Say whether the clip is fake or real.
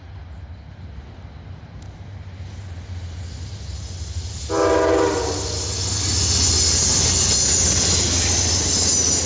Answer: real